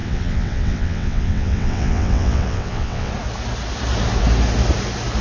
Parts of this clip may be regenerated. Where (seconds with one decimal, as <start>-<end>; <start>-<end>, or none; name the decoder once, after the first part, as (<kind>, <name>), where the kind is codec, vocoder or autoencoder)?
0.0-3.1 (vocoder, WaveNeXt)